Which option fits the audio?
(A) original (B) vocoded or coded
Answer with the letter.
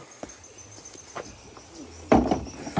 A